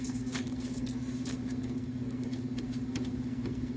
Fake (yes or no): yes